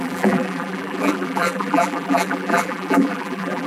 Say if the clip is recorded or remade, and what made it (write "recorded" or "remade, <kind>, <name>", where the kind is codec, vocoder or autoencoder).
remade, vocoder, BigVGAN v2